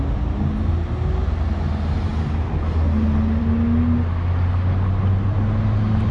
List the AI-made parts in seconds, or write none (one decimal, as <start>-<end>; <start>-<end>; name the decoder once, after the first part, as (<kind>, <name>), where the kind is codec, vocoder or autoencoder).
none